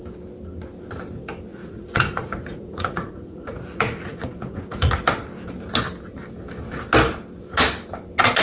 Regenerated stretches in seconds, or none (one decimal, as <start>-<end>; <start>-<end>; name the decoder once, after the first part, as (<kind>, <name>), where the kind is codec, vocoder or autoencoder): 1.5-4.9 (vocoder, Vocos)

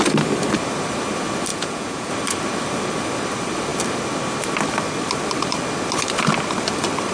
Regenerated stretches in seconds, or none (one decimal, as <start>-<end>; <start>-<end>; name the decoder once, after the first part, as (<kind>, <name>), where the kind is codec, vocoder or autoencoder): 1.5-2.1 (vocoder, Vocos)

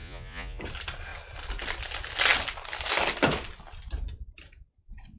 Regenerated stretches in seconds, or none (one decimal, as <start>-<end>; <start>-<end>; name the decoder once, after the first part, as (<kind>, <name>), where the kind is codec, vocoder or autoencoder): 0.0-0.6 (vocoder, Vocos)

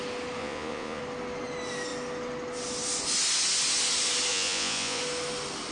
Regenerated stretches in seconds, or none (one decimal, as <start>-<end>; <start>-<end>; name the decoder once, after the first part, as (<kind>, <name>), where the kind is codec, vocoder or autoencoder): 0.4-1.0 (vocoder, Vocos); 4.3-5.0

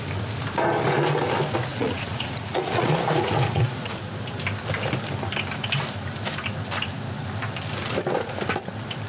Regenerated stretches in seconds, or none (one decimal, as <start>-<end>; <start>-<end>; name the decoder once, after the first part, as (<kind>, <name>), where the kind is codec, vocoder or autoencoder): 1.7-4.0 (vocoder, Vocos)

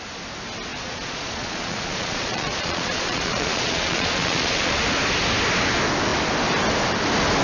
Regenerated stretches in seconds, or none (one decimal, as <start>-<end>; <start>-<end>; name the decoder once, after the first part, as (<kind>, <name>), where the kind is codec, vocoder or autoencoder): 0.7-4.8 (vocoder, Vocos)

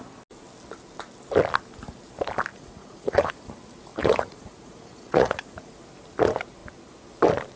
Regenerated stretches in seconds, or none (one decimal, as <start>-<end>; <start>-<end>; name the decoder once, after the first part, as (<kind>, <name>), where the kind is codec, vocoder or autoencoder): 2.5-3.3 (vocoder, Vocos); 3.9-5.7